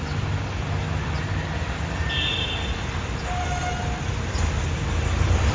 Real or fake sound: real